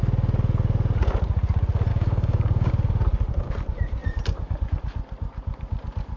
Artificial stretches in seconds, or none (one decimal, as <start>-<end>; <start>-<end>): 1.9-2.7